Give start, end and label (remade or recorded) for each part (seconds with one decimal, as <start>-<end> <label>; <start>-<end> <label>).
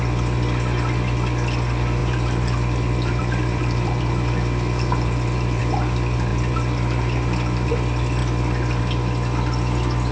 0.0-2.0 recorded; 2.0-5.6 remade; 5.6-6.3 recorded; 6.3-7.7 remade; 7.7-10.1 recorded